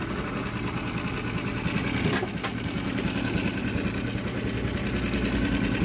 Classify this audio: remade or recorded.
recorded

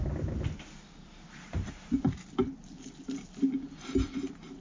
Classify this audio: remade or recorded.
recorded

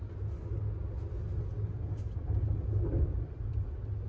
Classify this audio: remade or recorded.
recorded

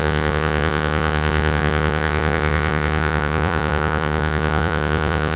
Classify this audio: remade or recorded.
remade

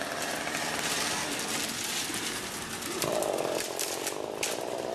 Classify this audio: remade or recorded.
remade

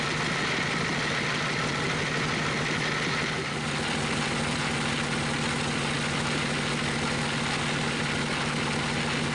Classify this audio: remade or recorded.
recorded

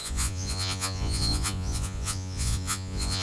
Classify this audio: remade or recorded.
remade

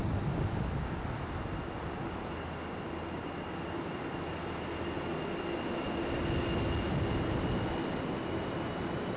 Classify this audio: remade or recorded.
recorded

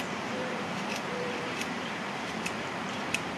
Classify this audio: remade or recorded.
remade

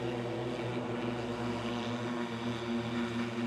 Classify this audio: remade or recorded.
recorded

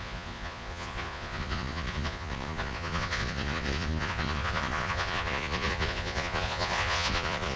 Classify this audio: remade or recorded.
remade